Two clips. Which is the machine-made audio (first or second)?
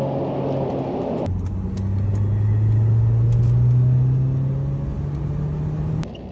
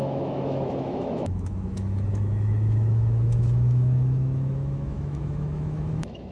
second